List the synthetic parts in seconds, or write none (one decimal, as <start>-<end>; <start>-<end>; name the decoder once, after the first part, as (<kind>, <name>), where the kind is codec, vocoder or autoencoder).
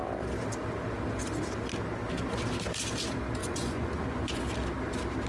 3.4-4.4 (vocoder, Vocos)